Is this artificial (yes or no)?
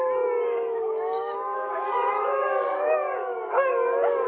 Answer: yes